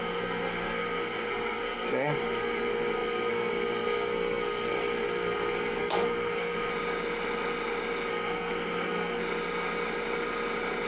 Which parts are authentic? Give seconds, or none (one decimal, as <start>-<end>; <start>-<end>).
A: 6.7-8.1; 9.2-10.9